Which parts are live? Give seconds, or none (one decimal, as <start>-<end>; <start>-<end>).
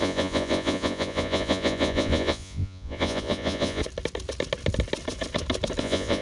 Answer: 3.8-5.8